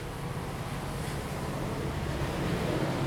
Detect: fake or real real